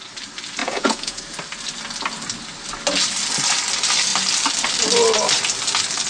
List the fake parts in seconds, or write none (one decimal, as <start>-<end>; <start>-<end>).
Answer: 0.6-1.2